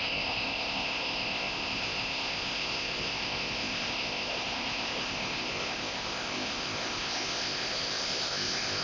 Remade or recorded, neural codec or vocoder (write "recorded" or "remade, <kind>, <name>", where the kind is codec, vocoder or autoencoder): remade, codec, ZipCodec